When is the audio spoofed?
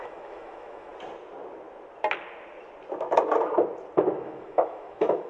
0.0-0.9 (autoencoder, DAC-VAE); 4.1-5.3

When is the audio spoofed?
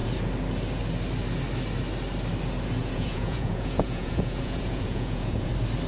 2.8-5.5 (vocoder, Vocos)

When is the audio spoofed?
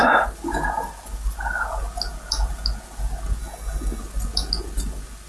3.4-4.0 (codec, DAC)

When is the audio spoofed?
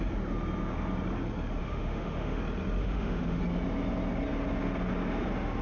1.6-2.4 (autoencoder, DAC-VAE); 2.8-3.4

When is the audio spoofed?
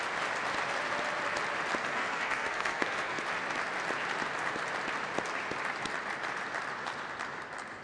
1.8-3.2 (codec, SNAC)